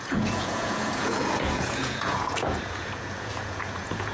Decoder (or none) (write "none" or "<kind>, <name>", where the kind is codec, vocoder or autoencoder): vocoder, Vocos